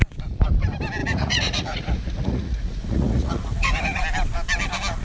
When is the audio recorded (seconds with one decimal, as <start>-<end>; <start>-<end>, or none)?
0.0-1.0; 4.0-5.0